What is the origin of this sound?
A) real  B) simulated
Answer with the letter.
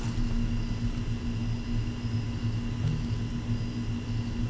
A